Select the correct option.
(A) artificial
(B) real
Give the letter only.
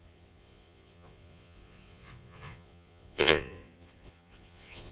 A